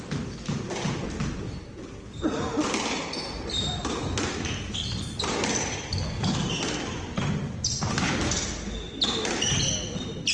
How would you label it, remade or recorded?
recorded